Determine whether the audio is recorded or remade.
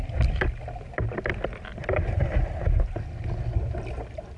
recorded